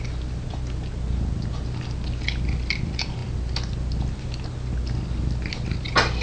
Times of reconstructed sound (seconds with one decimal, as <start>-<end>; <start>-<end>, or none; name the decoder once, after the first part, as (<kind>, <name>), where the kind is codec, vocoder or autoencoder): none